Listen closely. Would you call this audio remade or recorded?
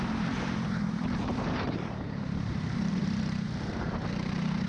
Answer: remade